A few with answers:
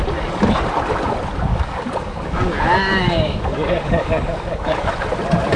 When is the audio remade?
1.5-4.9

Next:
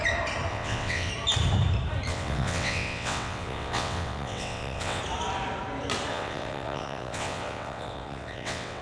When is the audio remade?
0.5-1.1; 2.1-5.0; 6.1-8.8

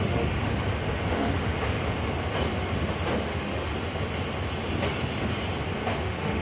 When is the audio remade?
0.0-0.5; 1.1-1.5; 3.2-3.7; 6.0-6.4

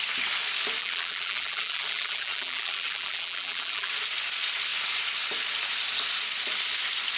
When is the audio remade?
0.8-3.9

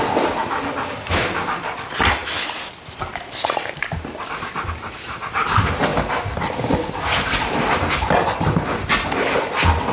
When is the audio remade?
0.0-0.4; 1.2-5.9; 6.9-9.9